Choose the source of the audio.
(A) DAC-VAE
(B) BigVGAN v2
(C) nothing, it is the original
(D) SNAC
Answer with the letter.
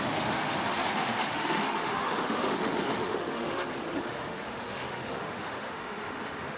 A